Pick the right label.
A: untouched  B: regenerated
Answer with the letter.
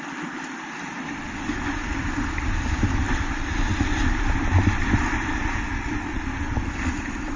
A